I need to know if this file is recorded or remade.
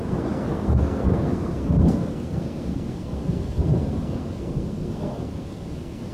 remade